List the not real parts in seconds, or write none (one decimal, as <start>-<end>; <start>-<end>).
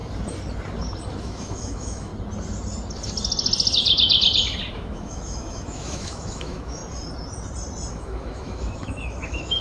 1.2-2.1; 4.7-6.8; 7.9-9.6